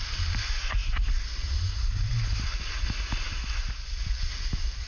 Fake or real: real